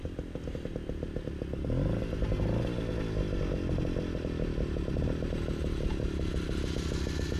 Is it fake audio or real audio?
real